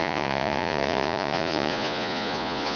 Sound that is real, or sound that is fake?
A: fake